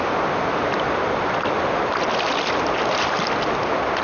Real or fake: real